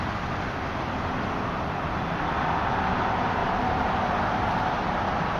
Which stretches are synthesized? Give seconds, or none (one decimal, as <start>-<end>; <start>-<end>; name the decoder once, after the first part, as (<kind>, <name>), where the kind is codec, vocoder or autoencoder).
3.4-4.7 (vocoder, BigVGAN v2)